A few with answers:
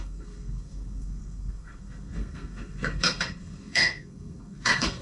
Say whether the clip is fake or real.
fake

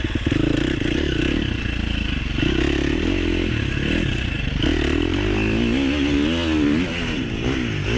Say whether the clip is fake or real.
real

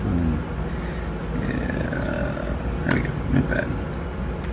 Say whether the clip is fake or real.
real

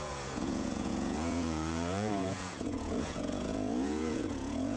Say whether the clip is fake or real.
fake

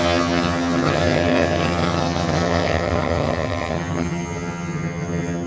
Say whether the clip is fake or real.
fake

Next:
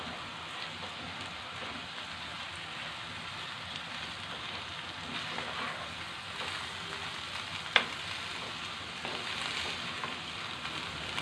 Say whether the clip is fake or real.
real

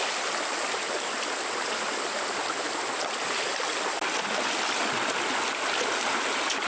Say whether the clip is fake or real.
real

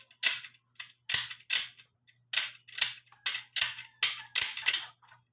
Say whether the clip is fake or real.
real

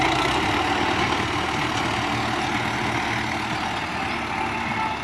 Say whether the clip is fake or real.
real